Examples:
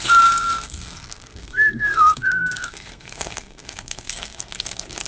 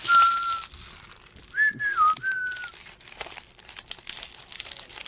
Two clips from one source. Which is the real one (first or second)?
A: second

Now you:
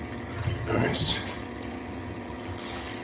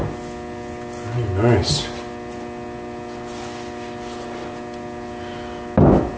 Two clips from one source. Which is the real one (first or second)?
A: second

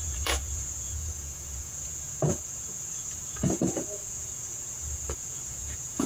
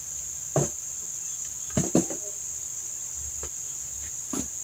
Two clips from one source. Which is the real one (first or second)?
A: second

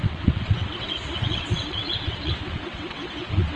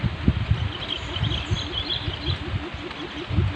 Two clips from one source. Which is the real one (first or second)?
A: second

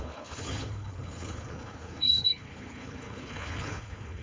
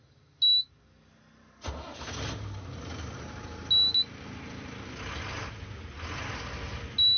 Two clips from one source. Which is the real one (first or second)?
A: second